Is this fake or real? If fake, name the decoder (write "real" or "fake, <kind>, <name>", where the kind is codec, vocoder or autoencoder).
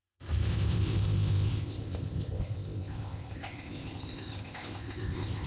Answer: fake, codec, ZipCodec